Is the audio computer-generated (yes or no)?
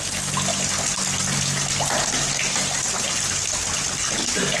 no